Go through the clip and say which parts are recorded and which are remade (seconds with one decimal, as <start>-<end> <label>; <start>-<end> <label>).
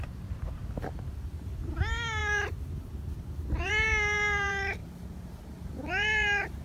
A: 0.0-0.6 remade; 0.6-1.2 recorded; 1.2-4.8 remade; 4.8-5.9 recorded; 5.9-6.6 remade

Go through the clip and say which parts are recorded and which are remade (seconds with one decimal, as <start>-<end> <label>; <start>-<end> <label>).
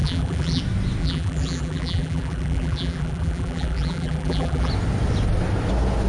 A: 0.0-0.6 remade; 0.6-1.0 recorded; 1.0-4.7 remade; 4.7-6.1 recorded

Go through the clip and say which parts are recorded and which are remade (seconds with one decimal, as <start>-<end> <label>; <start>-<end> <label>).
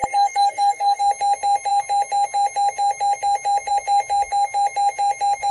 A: 0.0-1.0 remade; 1.0-5.5 recorded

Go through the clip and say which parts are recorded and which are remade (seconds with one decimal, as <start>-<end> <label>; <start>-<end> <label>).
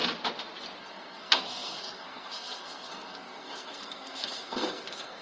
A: 0.0-0.8 recorded; 0.8-5.2 remade